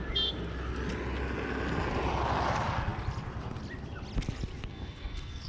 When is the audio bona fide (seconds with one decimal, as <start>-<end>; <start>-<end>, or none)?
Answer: 0.0-4.7